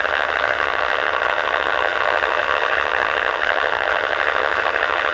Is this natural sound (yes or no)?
no